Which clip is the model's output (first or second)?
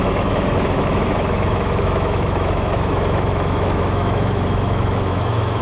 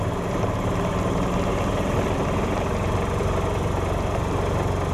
first